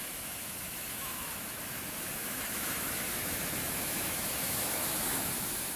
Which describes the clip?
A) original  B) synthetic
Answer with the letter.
B